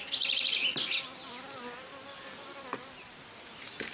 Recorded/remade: recorded